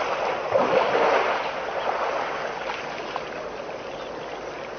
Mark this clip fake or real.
real